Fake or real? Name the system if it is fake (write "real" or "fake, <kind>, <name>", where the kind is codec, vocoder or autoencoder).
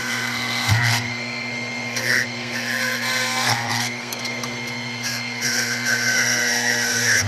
fake, codec, SNAC